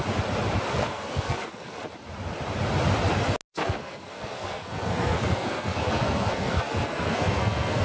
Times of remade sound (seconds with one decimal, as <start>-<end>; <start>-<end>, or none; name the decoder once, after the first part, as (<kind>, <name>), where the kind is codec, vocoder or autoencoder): 0.7-1.8 (codec, SNAC); 3.6-7.8